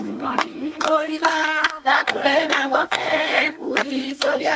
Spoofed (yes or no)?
yes